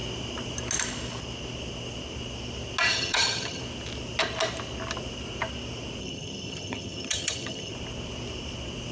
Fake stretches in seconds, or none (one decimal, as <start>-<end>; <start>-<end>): 2.9-3.6; 6.0-7.7